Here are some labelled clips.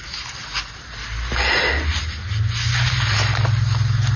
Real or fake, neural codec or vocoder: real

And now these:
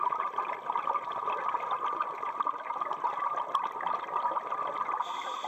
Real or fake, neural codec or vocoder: real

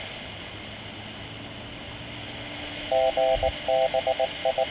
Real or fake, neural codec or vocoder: real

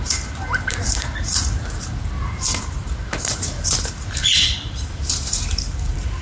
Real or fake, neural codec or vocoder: fake, vocoder, BigVGAN v2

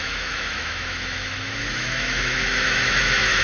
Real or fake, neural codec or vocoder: fake, autoencoder, DAC-VAE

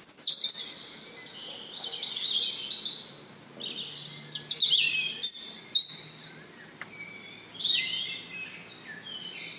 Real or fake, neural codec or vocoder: real